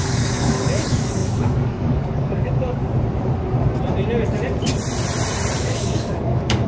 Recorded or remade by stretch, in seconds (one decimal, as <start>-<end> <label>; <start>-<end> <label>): 0.0-2.8 remade; 2.8-5.6 recorded; 5.6-6.7 remade